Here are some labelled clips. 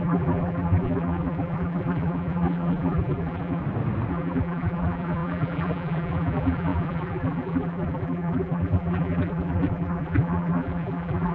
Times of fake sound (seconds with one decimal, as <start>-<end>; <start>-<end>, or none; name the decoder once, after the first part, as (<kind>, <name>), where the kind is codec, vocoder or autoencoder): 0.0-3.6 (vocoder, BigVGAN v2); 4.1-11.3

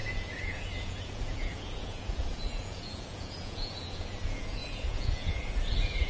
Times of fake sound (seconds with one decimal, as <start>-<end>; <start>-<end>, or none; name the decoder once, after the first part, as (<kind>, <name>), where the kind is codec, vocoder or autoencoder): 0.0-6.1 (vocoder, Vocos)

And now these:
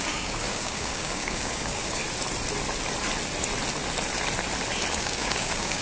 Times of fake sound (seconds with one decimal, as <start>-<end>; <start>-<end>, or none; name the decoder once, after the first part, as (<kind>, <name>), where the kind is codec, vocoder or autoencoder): 0.0-2.0 (codec, DAC); 5.0-5.8

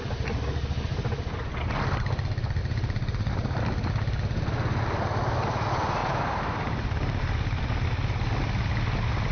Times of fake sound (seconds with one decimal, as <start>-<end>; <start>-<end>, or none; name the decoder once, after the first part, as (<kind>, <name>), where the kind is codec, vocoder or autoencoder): 2.6-3.6 (vocoder, BigVGAN v2); 6.0-7.2

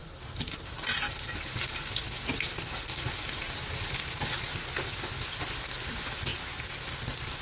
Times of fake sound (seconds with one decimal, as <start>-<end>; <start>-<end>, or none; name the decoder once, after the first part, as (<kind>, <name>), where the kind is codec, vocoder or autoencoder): none

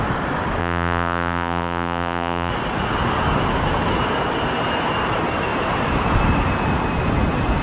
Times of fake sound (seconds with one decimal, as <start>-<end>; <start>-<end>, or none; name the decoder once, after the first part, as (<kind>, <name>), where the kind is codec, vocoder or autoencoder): 0.6-2.5 (vocoder, BigVGAN v2)

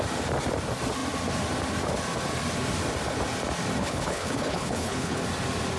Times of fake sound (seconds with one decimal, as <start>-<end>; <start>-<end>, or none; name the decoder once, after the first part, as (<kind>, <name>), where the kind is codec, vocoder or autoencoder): 3.8-5.2 (codec, HILCodec)